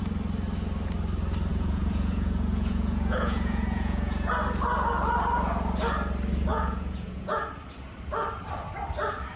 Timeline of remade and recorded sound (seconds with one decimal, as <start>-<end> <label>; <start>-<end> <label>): 0.0-1.5 recorded; 1.5-4.3 remade; 4.3-6.5 recorded; 6.5-7.4 remade; 7.4-9.4 recorded